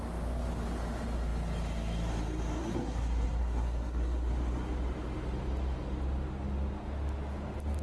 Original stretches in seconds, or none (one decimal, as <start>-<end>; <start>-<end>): 0.0-2.6; 4.3-7.8